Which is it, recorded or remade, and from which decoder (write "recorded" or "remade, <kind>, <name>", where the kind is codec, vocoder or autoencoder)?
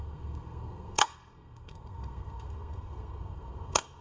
remade, codec, SNAC